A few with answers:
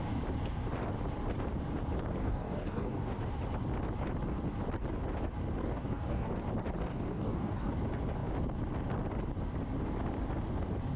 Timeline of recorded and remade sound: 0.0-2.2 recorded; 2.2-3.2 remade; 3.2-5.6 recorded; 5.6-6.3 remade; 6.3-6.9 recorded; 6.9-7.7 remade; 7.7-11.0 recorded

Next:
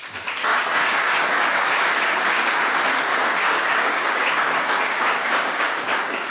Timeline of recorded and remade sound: 0.0-0.5 recorded; 0.5-2.6 remade; 2.6-3.2 recorded; 3.2-6.3 remade

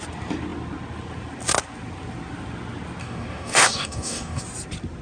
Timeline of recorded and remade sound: 0.0-3.0 recorded; 3.0-4.4 remade; 4.4-5.0 recorded

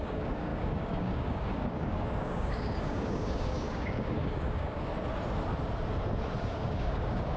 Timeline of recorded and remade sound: 0.0-4.9 remade; 4.9-6.4 recorded; 6.4-7.4 remade

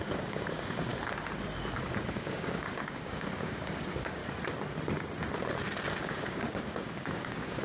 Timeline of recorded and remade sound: 0.0-0.9 remade; 0.9-2.1 recorded; 2.1-4.2 remade; 4.2-6.0 recorded; 6.0-7.6 remade

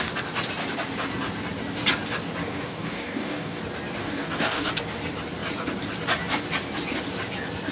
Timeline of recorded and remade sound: 0.0-2.4 recorded; 2.4-3.6 remade; 3.6-4.0 recorded; 4.0-4.7 remade; 4.7-7.7 recorded